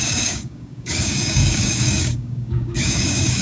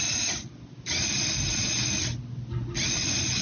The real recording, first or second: second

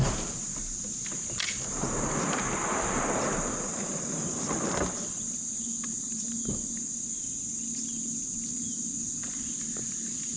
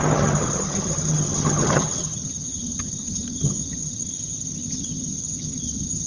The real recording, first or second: first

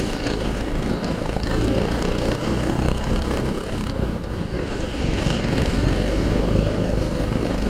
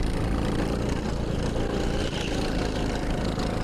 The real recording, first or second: second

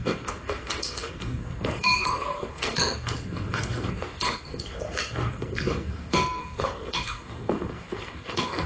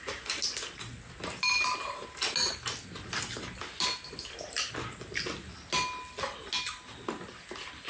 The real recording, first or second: second